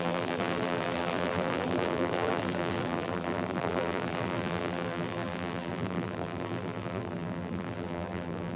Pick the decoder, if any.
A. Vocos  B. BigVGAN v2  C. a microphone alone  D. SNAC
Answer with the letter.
B